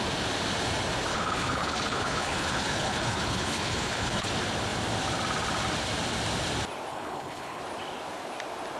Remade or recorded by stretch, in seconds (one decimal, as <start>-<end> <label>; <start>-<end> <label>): 0.0-1.1 recorded; 1.1-4.3 remade; 4.3-6.9 recorded; 6.9-7.6 remade; 7.6-8.8 recorded